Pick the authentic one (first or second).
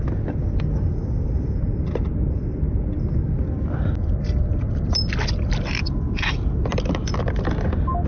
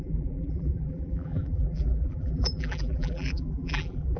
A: first